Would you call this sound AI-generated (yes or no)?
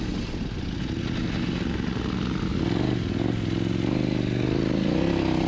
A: no